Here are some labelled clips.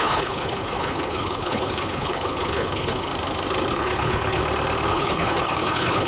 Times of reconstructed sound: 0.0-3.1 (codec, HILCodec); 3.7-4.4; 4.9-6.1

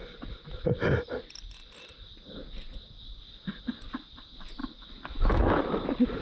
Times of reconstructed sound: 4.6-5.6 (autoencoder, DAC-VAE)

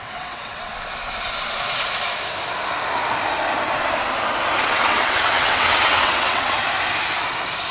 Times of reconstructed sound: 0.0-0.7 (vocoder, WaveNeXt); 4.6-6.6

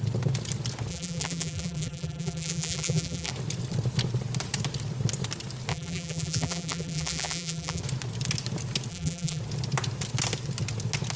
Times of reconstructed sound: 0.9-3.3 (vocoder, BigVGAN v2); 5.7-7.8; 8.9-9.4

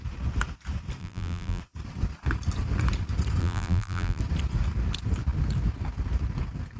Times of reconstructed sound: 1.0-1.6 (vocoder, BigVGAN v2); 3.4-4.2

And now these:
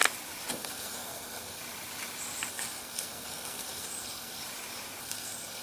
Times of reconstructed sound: 0.5-1.6 (codec, SNAC); 2.5-4.4; 5.0-5.6

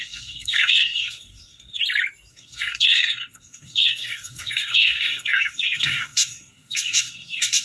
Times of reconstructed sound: 0.0-1.8 (codec, SNAC); 2.3-7.6

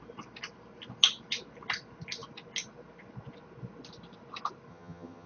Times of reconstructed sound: 4.7-5.3 (vocoder, HiFi-GAN)